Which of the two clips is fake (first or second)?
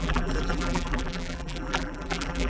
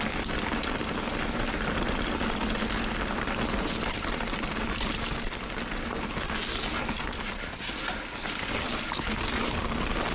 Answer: first